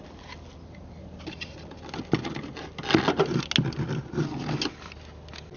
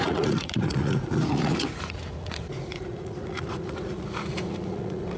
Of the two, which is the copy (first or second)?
second